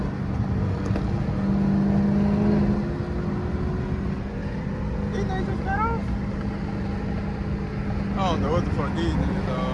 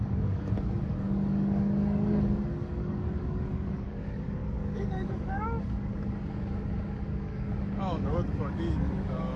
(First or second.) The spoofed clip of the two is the second